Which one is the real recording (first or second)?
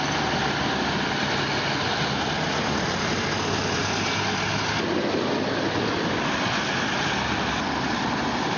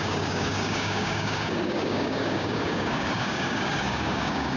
first